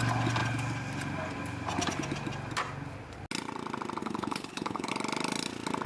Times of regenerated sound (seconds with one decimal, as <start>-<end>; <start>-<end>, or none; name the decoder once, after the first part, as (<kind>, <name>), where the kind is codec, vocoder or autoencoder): 4.0-4.9 (codec, HILCodec)